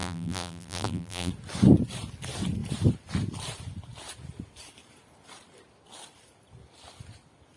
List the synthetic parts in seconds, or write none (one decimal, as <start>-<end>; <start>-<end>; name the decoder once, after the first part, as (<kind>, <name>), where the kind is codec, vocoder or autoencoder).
0.0-1.3 (vocoder, BigVGAN v2)